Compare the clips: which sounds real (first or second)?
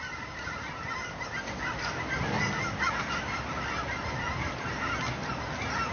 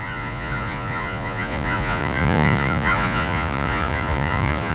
first